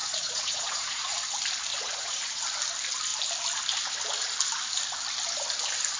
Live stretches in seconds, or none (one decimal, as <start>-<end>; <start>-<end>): 1.1-1.7; 2.4-6.0